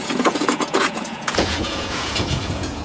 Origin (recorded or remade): remade